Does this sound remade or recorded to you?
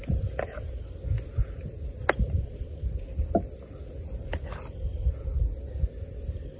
recorded